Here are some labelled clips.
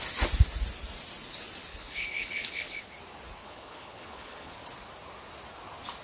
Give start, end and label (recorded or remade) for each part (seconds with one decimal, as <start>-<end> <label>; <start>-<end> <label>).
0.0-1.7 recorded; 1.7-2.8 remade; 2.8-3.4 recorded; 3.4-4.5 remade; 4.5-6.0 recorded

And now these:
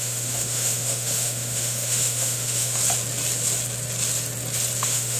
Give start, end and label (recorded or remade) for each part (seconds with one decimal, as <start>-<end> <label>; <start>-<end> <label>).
0.0-2.8 remade; 2.8-4.8 recorded; 4.8-5.2 remade

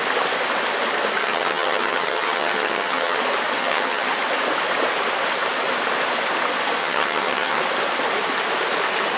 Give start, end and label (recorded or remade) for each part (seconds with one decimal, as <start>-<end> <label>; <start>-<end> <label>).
0.0-1.2 recorded; 1.2-3.2 remade; 3.2-3.6 recorded; 3.6-4.1 remade; 4.1-6.8 recorded; 6.8-7.6 remade; 7.6-9.2 recorded